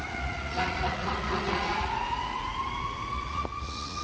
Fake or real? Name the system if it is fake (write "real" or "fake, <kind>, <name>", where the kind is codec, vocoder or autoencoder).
fake, vocoder, Vocos